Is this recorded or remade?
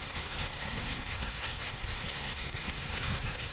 remade